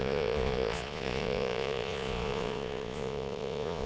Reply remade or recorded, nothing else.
remade